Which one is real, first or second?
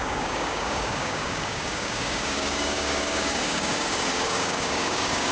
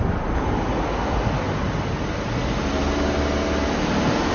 second